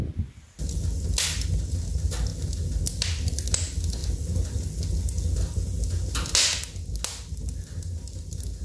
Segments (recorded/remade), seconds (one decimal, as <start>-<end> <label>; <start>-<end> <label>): 0.0-8.6 recorded